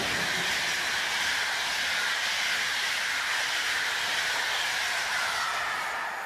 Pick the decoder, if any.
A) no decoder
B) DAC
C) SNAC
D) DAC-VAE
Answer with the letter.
A